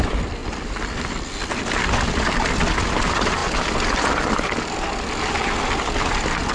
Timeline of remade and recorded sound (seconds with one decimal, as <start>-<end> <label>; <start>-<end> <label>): 0.0-0.4 recorded; 0.4-1.1 remade; 1.1-6.5 recorded